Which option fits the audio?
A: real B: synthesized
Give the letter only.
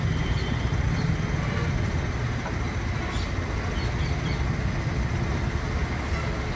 A